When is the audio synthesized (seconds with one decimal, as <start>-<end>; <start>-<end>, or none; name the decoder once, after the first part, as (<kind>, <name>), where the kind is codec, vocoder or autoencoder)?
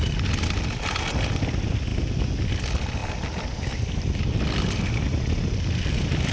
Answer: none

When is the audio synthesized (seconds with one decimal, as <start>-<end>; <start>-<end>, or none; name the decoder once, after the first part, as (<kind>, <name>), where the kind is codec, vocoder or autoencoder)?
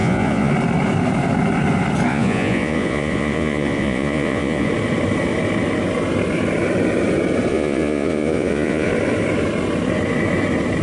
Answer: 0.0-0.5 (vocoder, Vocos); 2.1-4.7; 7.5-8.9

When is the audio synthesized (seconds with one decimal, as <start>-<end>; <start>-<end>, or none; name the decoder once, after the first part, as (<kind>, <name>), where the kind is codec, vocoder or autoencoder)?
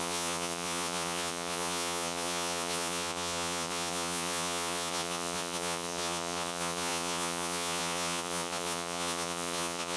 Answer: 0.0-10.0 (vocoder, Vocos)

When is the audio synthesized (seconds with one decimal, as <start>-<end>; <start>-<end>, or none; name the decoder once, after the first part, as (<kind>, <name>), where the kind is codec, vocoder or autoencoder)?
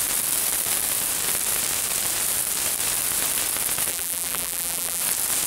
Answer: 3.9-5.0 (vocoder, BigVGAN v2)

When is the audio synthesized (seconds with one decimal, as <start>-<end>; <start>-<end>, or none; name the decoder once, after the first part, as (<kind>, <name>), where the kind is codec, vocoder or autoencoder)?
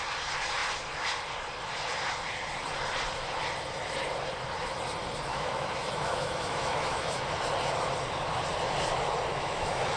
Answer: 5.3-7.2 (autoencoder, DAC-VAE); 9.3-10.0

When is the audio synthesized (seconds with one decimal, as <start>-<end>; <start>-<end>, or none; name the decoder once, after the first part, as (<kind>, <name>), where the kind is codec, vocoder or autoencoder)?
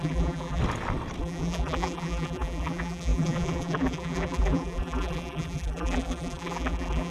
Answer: 0.0-0.6 (vocoder, BigVGAN v2); 1.2-7.1